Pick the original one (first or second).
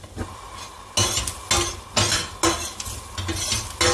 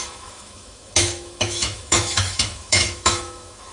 first